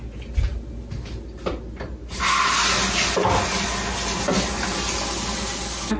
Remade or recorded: recorded